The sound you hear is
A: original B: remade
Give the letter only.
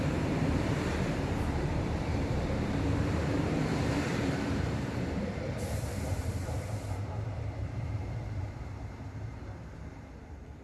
B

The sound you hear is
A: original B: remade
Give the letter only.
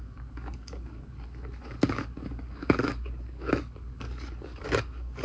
B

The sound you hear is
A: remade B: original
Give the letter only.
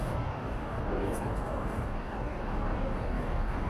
A